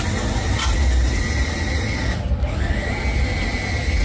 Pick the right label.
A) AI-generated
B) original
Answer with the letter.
B